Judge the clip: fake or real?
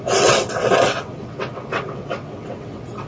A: fake